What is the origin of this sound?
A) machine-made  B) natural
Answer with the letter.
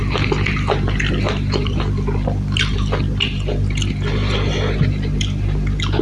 B